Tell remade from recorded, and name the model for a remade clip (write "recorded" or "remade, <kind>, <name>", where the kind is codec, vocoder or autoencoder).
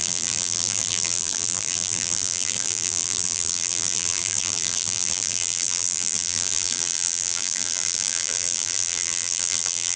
remade, vocoder, BigVGAN v2